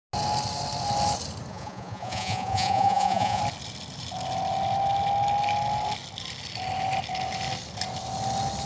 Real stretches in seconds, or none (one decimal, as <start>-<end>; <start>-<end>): 0.0-1.5; 3.4-8.7